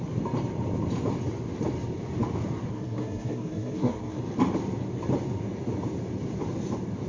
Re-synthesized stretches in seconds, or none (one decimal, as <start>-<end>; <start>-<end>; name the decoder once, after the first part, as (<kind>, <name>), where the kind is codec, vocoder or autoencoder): 2.7-4.2 (codec, SNAC)